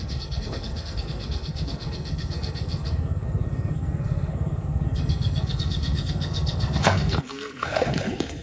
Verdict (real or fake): fake